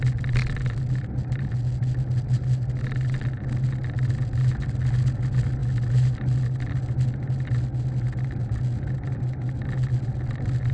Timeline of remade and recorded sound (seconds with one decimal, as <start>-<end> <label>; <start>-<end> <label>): 0.0-10.7 recorded